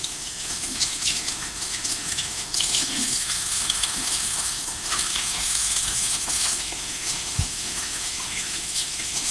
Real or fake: fake